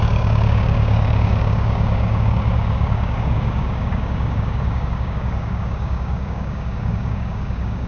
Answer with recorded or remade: remade